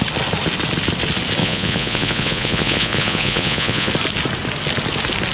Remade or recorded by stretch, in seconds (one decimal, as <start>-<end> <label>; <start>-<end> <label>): 0.0-1.4 recorded; 1.4-3.9 remade; 3.9-5.3 recorded